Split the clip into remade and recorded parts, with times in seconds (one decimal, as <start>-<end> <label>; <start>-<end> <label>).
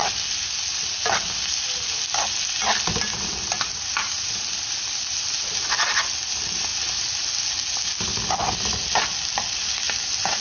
0.0-10.4 recorded